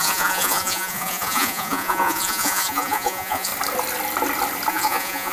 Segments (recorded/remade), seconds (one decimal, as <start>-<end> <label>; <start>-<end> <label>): 0.0-3.5 remade; 3.5-4.7 recorded; 4.7-5.3 remade